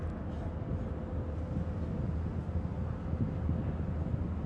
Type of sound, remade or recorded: recorded